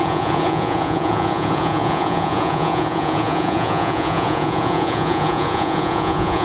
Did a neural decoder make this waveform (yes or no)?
yes